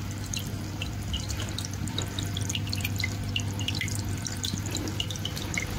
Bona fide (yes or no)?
yes